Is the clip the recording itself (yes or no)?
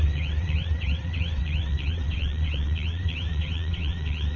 no